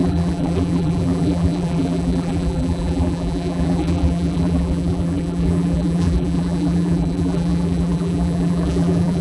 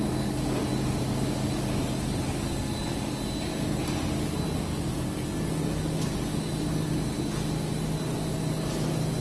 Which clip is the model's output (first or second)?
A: first